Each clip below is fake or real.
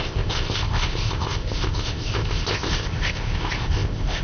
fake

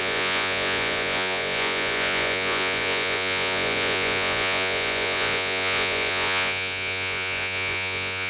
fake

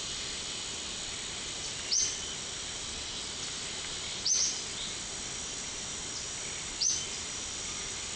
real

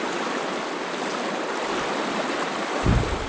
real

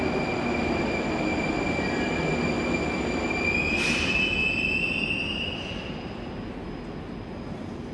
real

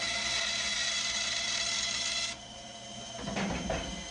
real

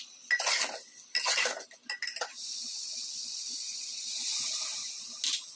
real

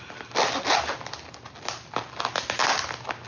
real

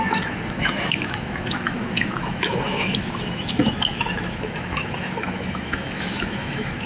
fake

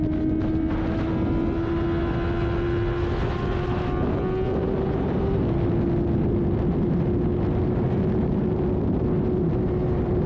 real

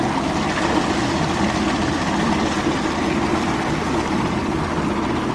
real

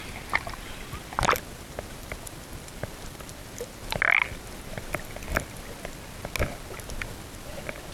real